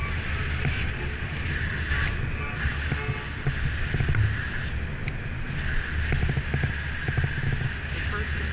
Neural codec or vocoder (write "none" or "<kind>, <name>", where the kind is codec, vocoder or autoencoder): none